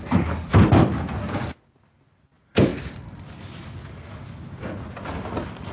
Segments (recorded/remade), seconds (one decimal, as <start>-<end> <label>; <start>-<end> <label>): 0.0-5.7 recorded